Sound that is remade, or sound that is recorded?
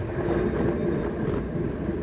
recorded